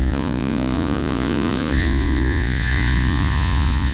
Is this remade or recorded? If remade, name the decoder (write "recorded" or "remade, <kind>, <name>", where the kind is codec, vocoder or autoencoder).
remade, vocoder, Vocos